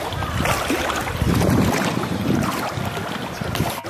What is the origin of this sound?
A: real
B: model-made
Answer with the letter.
A